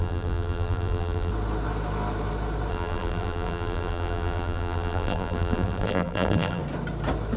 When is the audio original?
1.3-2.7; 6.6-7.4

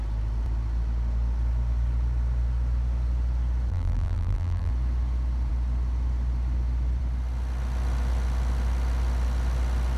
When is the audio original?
0.0-3.7; 4.7-10.0

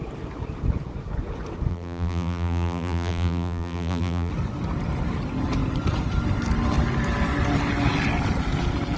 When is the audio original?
0.0-1.7; 4.3-9.0

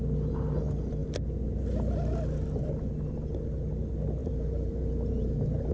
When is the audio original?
0.0-4.2

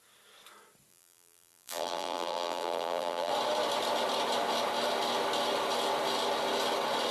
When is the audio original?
0.0-0.9; 3.3-7.1